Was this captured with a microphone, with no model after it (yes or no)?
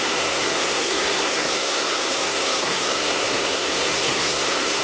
no